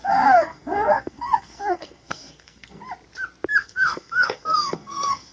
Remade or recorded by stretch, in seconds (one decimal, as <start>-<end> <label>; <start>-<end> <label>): 0.0-2.8 remade; 2.8-3.6 recorded; 3.6-5.3 remade

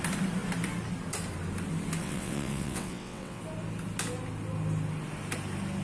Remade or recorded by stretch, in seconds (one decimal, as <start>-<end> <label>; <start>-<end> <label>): 0.0-2.0 recorded; 2.0-3.4 remade; 3.4-5.8 recorded

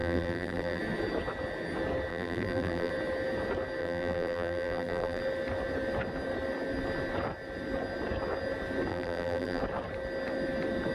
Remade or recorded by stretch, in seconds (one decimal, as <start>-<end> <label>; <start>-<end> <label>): 0.0-0.8 remade; 0.8-2.1 recorded; 2.1-2.9 remade; 2.9-3.8 recorded; 3.8-5.2 remade; 5.2-8.9 recorded; 8.9-9.6 remade; 9.6-10.9 recorded

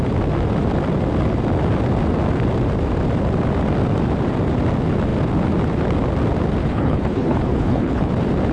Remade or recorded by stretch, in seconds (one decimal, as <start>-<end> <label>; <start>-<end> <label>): 0.0-6.6 recorded; 6.6-8.1 remade; 8.1-8.5 recorded

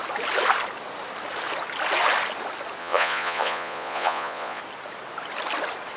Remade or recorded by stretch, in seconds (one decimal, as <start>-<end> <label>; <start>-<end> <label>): 0.0-2.8 recorded; 2.8-4.6 remade; 4.6-6.0 recorded

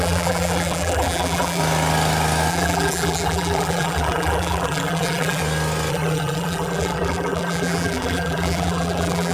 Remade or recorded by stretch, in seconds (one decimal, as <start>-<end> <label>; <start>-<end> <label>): 0.0-1.6 remade; 1.6-2.5 recorded; 2.5-5.4 remade; 5.4-5.9 recorded; 5.9-9.3 remade